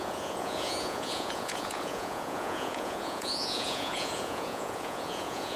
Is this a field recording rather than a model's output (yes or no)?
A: no